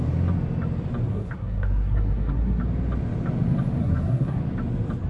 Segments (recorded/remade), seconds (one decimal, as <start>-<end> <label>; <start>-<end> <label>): 0.0-1.1 recorded; 1.1-2.6 remade; 2.6-3.8 recorded; 3.8-4.4 remade; 4.4-5.1 recorded